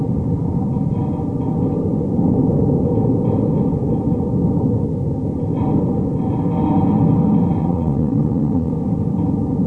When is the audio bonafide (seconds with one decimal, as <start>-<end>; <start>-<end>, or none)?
0.0-7.6; 8.7-9.7